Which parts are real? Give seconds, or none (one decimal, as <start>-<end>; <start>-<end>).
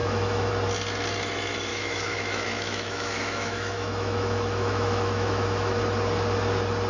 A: 0.5-1.7; 5.8-6.9